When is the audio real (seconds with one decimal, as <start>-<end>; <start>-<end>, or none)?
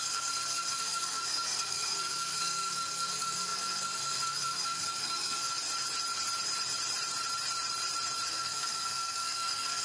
5.5-8.3